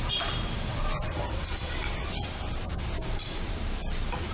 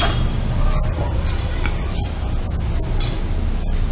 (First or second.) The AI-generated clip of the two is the first